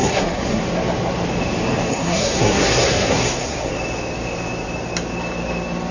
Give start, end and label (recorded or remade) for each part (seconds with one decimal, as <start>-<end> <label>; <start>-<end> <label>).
0.0-0.6 remade; 0.6-1.9 recorded; 1.9-3.7 remade; 3.7-5.9 recorded